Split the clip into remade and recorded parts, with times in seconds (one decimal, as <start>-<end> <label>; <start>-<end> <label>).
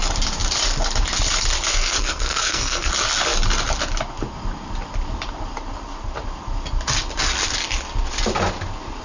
0.0-1.7 recorded; 1.7-2.9 remade; 2.9-9.0 recorded